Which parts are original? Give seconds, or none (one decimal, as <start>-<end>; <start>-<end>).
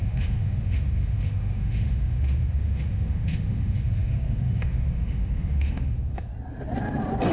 6.3-7.3